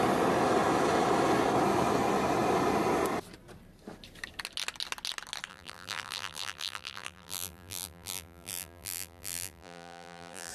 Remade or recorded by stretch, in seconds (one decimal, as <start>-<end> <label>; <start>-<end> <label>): 0.0-5.5 recorded; 5.5-10.5 remade

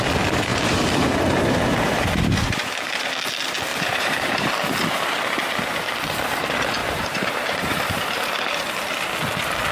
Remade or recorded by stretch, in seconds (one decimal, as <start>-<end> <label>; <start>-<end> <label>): 0.0-0.5 recorded; 0.5-3.0 remade; 3.0-3.7 recorded; 3.7-4.5 remade; 4.5-6.8 recorded; 6.8-8.2 remade; 8.2-9.7 recorded

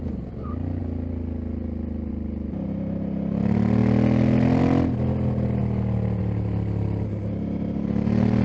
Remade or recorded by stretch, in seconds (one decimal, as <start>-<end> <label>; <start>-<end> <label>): 0.0-8.4 recorded

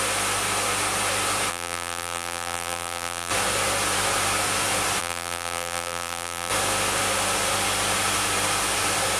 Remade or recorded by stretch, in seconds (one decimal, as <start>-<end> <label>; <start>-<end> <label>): 0.0-1.5 recorded; 1.5-3.3 remade; 3.3-5.0 recorded; 5.0-6.5 remade; 6.5-9.2 recorded

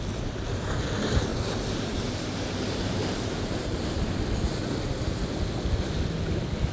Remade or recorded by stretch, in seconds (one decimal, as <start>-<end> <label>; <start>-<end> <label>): 0.0-1.3 recorded; 1.3-3.8 remade; 3.8-6.7 recorded